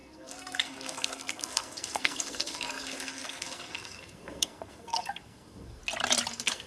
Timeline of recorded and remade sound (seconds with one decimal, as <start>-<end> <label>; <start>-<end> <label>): 0.0-5.8 remade; 5.8-6.3 recorded; 6.3-6.7 remade